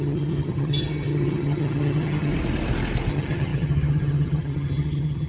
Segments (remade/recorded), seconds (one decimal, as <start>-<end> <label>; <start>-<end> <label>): 0.0-2.3 remade; 2.3-3.1 recorded; 3.1-5.3 remade